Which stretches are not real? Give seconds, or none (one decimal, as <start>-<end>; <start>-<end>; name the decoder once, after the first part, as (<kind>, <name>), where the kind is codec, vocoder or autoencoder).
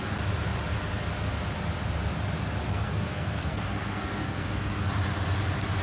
2.7-4.9 (codec, SNAC)